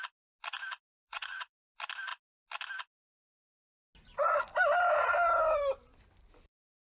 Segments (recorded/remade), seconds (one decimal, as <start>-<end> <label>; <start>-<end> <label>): 0.0-0.9 recorded; 0.9-1.6 remade; 1.6-7.0 recorded